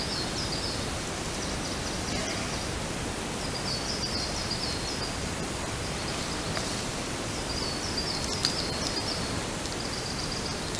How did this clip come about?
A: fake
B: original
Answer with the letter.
B